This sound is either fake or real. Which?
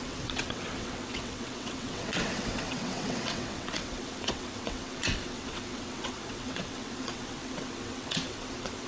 fake